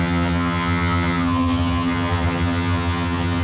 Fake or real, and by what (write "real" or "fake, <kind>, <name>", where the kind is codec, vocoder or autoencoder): fake, vocoder, HiFi-GAN